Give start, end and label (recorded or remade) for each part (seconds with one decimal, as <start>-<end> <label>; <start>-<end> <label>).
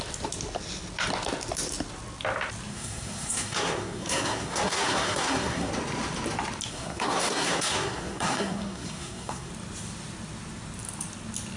0.0-2.7 recorded; 2.7-5.7 remade; 5.7-6.7 recorded; 6.7-9.5 remade; 9.5-11.6 recorded